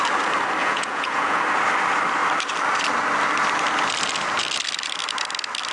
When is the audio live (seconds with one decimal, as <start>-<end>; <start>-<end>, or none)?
0.0-0.6; 1.4-5.7